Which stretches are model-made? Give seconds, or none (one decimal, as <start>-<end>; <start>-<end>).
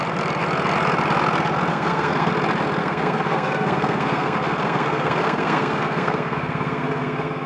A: 1.7-2.3; 2.8-7.5